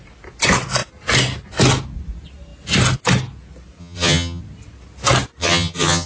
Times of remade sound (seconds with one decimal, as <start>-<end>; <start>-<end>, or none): 3.8-4.4; 5.4-6.1